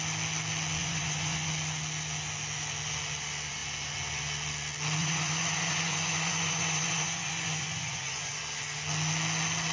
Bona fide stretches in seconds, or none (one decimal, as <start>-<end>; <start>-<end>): 0.0-0.8; 1.5-5.0; 8.4-9.7